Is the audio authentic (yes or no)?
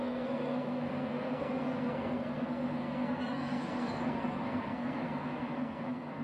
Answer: no